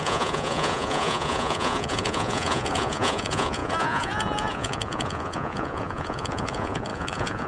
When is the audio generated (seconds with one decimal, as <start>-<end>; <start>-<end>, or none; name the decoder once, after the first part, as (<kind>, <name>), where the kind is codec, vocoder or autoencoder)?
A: 0.0-7.5 (vocoder, Vocos)